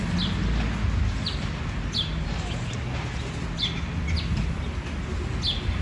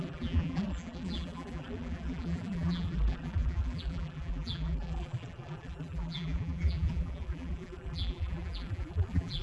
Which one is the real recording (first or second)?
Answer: first